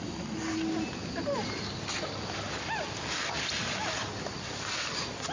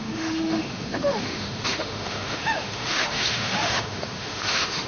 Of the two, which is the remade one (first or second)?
second